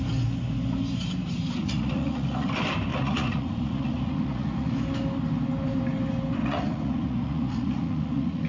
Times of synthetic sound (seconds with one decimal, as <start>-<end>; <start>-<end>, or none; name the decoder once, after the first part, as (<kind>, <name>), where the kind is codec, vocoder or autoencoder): 1.6-2.5 (vocoder, Vocos); 2.9-4.7; 6.4-8.5